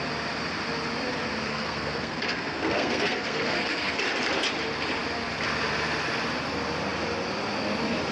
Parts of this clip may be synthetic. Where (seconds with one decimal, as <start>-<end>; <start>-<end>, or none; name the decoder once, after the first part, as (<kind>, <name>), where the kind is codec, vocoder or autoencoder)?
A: 1.5-4.0 (codec, SNAC)